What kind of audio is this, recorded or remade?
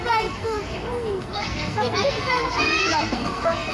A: remade